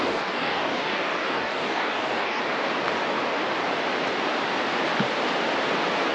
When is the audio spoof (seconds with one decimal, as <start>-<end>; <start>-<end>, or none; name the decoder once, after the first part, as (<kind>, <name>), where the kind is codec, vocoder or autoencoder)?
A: 0.0-2.4 (codec, DAC)

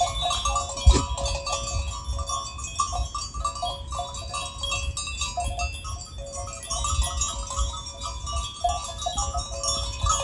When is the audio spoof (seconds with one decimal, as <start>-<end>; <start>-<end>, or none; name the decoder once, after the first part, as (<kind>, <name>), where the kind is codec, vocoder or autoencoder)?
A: none

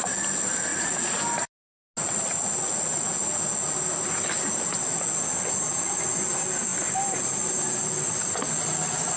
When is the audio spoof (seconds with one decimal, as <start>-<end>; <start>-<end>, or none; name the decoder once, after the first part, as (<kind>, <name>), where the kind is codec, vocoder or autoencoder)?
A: none